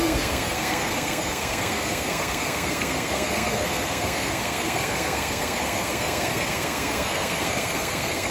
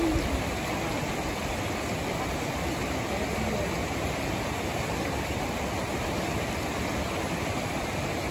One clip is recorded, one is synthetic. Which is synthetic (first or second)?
first